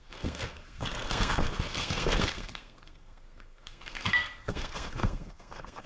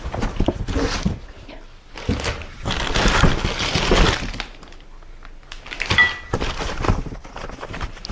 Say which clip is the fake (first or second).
first